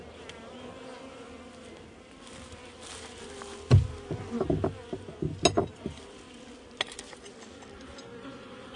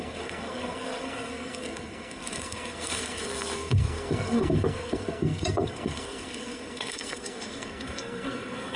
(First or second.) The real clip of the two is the first